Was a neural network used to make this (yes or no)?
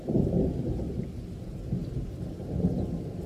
no